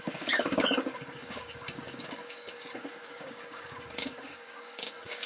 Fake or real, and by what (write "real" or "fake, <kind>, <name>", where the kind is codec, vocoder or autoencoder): fake, codec, DAC